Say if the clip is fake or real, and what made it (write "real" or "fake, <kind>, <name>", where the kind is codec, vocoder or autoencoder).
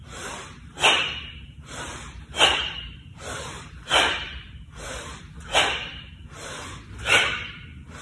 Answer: fake, vocoder, BigVGAN v2